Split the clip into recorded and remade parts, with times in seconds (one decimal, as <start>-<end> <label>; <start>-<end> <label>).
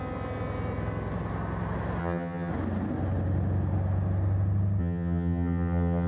0.0-2.0 recorded; 2.0-2.5 remade; 2.5-4.8 recorded; 4.8-6.1 remade